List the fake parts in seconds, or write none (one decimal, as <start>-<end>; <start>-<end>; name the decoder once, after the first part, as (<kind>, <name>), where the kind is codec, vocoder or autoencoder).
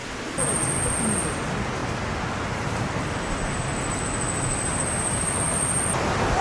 none